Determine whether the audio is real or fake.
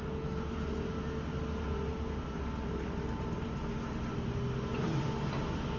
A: real